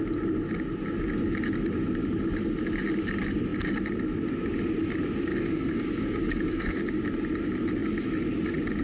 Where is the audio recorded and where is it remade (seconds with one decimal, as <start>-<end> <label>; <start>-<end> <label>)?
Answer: 0.0-5.3 recorded; 5.3-7.0 remade; 7.0-8.8 recorded